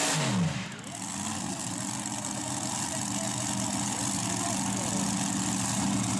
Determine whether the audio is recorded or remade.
recorded